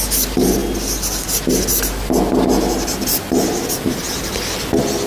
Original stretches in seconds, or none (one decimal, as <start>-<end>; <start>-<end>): 0.0-5.1